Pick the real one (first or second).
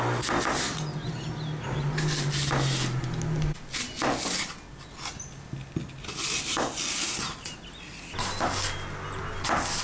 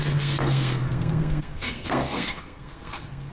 first